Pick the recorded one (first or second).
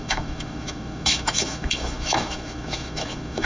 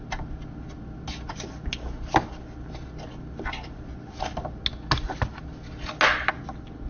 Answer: second